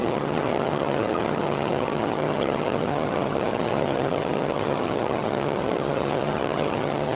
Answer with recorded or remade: remade